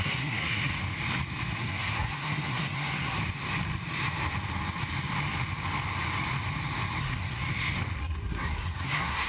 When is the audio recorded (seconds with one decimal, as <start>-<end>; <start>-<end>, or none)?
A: 0.7-1.6; 3.2-7.0; 7.4-8.0